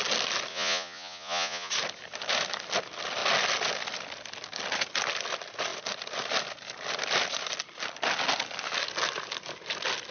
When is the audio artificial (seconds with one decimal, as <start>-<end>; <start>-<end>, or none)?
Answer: 0.5-1.7